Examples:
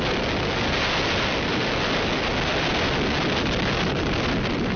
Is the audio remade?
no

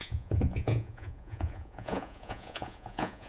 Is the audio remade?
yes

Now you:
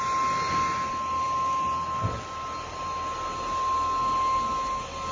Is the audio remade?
no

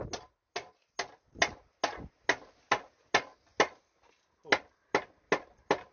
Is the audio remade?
no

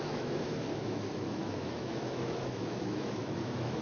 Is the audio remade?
yes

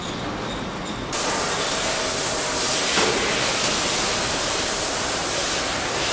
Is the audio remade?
no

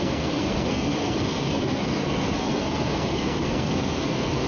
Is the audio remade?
yes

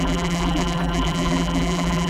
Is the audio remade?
yes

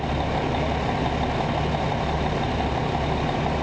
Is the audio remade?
no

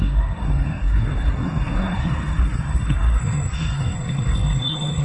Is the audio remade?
yes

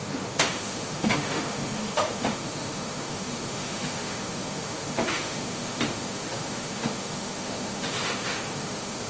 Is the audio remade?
yes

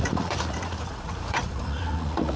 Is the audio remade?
yes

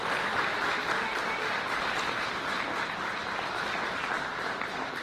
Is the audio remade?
no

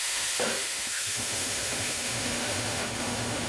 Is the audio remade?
yes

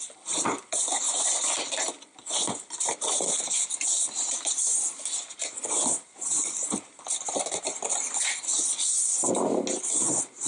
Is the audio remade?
no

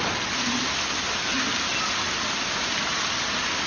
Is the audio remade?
no